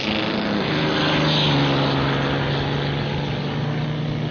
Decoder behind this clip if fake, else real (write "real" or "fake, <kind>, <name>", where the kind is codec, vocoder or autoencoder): real